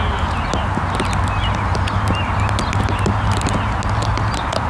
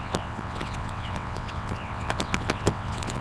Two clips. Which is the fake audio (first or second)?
second